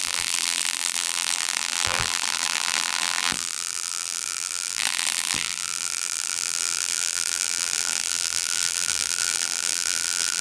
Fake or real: fake